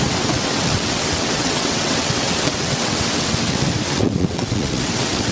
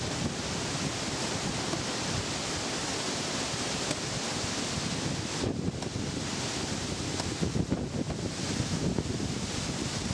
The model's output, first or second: first